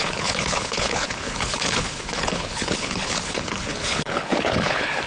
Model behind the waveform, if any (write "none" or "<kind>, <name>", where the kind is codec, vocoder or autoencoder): codec, HILCodec